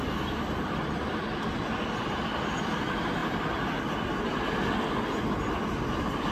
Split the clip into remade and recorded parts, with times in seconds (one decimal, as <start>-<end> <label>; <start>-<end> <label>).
0.0-6.3 recorded